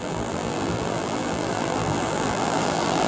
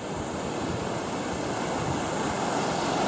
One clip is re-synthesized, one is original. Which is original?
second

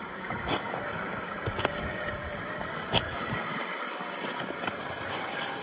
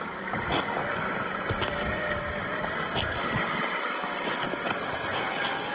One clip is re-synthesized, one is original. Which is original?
second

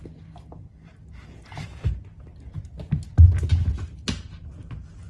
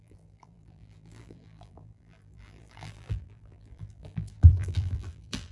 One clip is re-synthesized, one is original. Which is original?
first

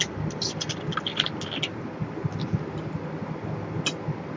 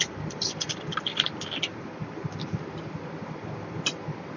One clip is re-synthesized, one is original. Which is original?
first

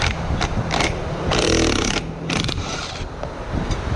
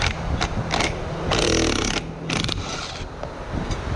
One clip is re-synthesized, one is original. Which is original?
second